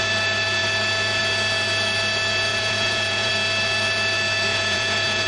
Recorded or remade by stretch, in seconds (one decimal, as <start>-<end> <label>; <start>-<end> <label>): 0.0-2.5 recorded; 2.5-3.3 remade; 3.3-4.5 recorded; 4.5-5.3 remade